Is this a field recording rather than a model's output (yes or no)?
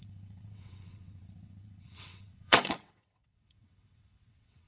no